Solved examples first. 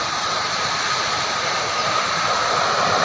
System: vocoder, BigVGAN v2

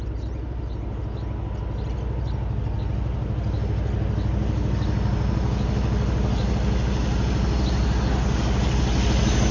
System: none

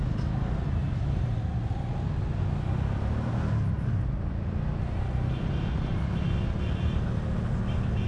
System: none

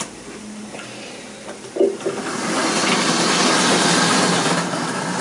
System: none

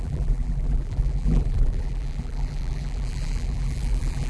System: vocoder, BigVGAN v2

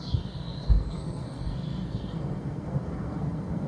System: codec, SNAC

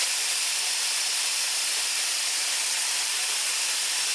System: none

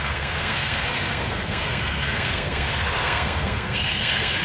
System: codec, SNAC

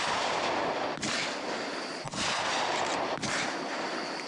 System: none